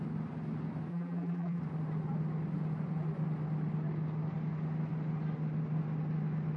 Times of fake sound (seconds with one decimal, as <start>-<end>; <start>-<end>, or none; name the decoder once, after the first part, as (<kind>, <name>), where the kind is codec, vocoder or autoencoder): 0.9-1.6 (vocoder, BigVGAN v2)